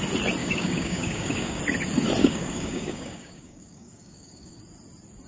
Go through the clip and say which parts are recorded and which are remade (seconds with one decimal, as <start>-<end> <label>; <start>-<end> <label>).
0.0-0.4 recorded; 0.4-1.6 remade; 1.6-2.2 recorded; 2.2-4.6 remade; 4.6-5.3 recorded